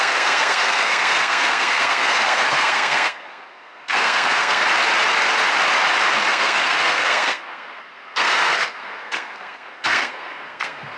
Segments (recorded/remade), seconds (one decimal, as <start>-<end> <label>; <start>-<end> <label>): 0.0-4.6 remade; 4.6-6.3 recorded; 6.3-11.0 remade